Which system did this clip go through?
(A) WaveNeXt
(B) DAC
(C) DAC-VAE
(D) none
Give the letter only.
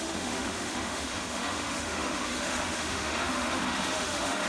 C